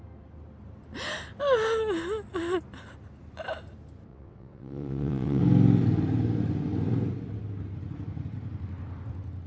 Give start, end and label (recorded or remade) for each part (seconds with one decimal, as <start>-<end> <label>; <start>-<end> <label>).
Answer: 0.0-4.1 recorded; 4.1-5.4 remade; 5.4-9.5 recorded